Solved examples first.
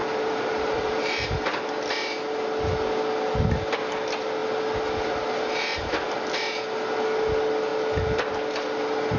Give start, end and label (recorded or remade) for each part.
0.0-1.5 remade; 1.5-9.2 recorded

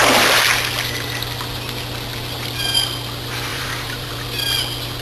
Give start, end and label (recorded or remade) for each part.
0.0-3.5 recorded; 3.5-4.1 remade; 4.1-5.0 recorded

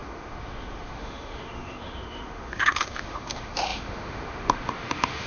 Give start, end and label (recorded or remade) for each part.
0.0-5.3 remade

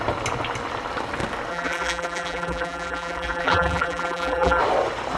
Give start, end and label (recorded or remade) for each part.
0.0-1.5 recorded; 1.5-4.6 remade; 4.6-5.2 recorded

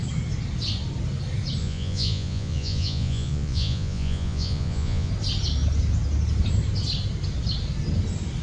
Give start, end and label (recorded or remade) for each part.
0.0-1.6 recorded; 1.6-5.1 remade; 5.1-8.4 recorded

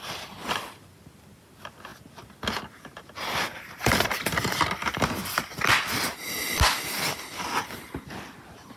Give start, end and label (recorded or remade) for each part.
0.0-8.8 recorded

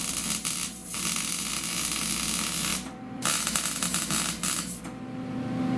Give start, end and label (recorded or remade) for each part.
0.0-0.8 recorded; 0.8-1.5 remade; 1.5-2.7 recorded; 2.7-4.8 remade; 4.8-5.8 recorded

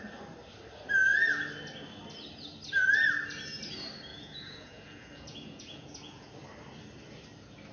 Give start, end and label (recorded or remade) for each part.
0.0-4.1 recorded; 4.1-6.3 remade; 6.3-7.7 recorded